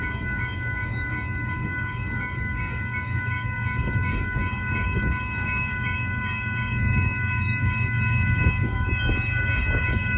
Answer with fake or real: fake